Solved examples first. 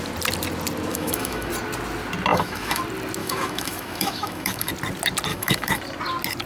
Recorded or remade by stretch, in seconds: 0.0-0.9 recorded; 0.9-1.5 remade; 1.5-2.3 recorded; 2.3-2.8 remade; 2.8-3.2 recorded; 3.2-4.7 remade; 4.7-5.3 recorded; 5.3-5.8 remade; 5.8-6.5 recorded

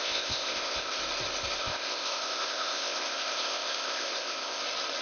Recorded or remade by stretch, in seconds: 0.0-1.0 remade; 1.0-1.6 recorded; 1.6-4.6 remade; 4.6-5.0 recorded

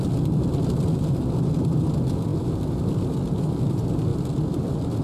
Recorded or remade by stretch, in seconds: 0.0-5.0 recorded

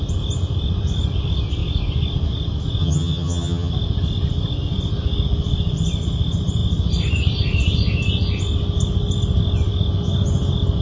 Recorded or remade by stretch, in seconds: 0.0-2.8 recorded; 2.8-3.7 remade; 3.7-10.8 recorded